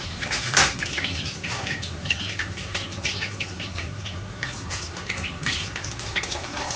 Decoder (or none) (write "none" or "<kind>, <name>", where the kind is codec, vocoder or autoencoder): codec, SNAC